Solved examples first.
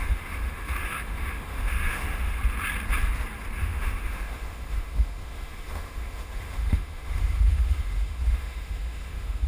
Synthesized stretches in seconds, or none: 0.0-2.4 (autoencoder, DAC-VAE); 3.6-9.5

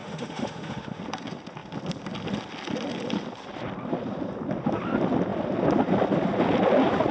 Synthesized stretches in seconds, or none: 0.0-1.0 (autoencoder, DAC-VAE)

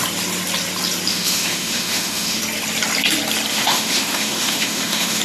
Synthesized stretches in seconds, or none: 1.1-2.4 (autoencoder, DAC-VAE); 3.5-5.2

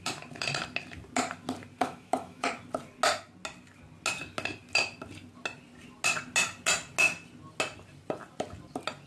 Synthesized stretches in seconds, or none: 1.8-2.5 (autoencoder, DAC-VAE)

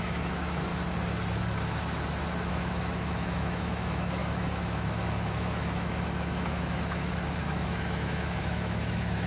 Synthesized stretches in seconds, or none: 0.0-0.7 (autoencoder, DAC-VAE); 2.5-9.3

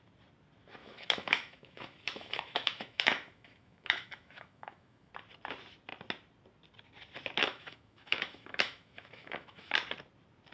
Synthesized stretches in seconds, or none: 0.8-5.1 (autoencoder, DAC-VAE); 7.4-9.7

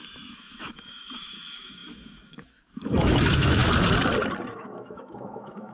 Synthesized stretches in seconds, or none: 0.0-3.6 (autoencoder, DAC-VAE); 4.5-5.7

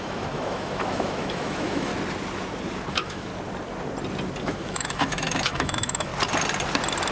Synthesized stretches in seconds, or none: 0.0-1.9 (autoencoder, DAC-VAE); 2.9-3.3; 4.4-6.1